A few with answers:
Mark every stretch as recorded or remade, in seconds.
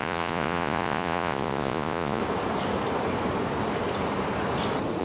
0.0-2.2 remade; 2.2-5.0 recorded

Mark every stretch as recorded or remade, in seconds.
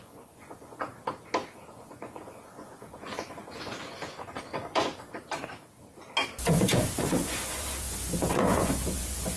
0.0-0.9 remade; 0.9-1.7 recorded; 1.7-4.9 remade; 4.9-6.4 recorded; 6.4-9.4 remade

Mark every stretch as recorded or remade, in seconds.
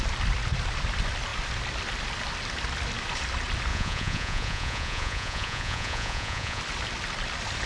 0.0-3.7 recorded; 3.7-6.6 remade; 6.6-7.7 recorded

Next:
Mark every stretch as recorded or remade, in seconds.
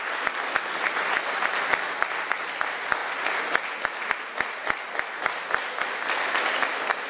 0.0-7.1 recorded